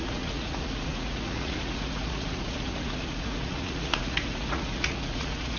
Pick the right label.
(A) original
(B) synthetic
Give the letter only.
B